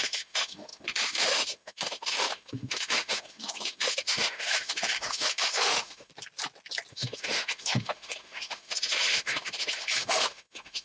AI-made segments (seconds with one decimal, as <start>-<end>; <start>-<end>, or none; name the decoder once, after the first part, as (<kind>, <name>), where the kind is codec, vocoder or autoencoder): 0.0-6.1 (autoencoder, DAC-VAE); 6.9-10.8